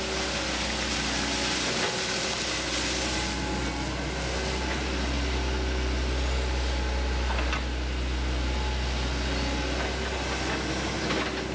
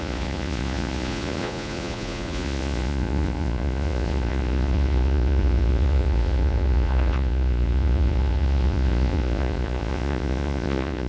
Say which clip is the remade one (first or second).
second